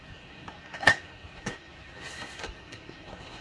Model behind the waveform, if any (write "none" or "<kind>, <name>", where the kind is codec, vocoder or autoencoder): codec, SNAC